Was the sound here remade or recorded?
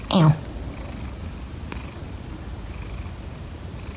recorded